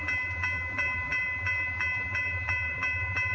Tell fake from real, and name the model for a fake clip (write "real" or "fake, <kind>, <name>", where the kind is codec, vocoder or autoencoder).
fake, vocoder, BigVGAN v2